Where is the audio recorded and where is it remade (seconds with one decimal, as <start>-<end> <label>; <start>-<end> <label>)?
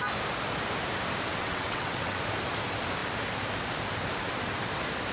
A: 0.0-1.3 recorded; 1.3-2.2 remade; 2.2-5.1 recorded